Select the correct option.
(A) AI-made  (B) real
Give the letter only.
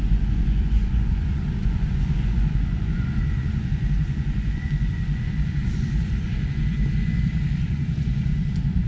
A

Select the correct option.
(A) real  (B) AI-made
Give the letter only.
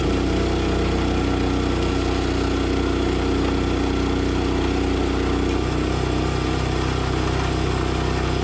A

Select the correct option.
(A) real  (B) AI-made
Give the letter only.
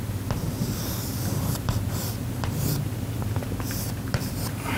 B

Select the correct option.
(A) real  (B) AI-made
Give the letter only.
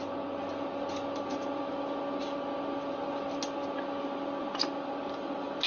A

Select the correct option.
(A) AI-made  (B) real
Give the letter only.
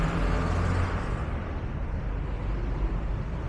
B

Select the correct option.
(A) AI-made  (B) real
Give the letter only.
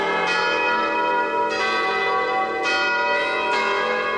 B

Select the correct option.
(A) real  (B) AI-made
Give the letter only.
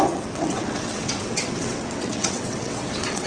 B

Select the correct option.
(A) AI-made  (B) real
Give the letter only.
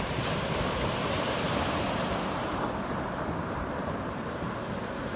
A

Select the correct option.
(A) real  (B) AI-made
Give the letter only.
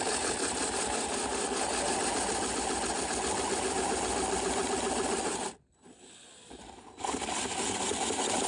A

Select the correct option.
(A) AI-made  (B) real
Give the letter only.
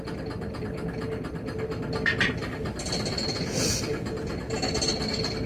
B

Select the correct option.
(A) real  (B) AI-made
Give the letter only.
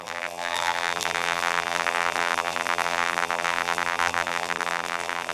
B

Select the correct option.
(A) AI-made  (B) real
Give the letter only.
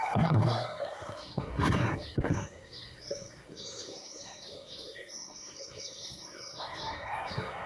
A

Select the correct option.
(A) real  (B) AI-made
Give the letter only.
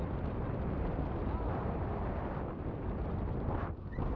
A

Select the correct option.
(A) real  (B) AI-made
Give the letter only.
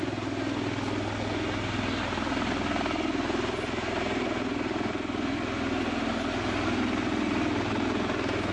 A